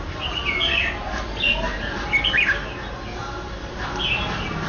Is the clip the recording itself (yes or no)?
yes